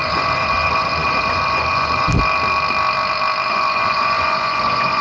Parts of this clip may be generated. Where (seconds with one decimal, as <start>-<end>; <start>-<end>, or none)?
0.0-2.1; 3.5-5.0